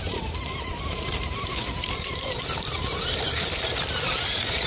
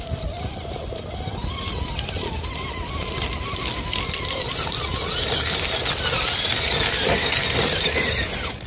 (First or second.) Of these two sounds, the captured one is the second